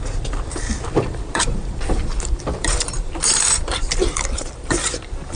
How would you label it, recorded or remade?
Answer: remade